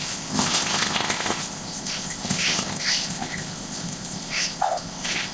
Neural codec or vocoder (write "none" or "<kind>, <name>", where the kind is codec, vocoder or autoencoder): codec, ZipCodec